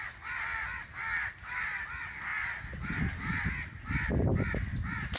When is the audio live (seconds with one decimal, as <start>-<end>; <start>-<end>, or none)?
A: 0.0-5.2